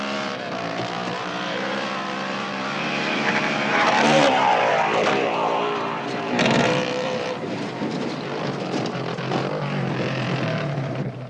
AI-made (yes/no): yes